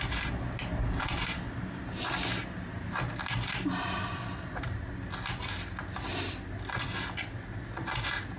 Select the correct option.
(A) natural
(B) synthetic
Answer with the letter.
A